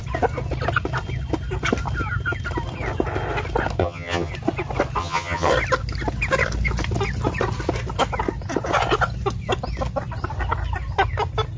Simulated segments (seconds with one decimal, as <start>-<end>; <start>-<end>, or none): 3.8-4.3; 5.0-5.5